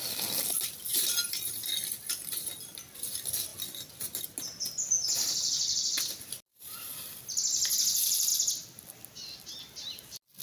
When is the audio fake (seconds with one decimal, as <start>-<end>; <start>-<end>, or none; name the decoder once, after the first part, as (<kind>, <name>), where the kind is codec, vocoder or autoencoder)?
0.9-1.5 (vocoder, BigVGAN v2); 6.5-7.4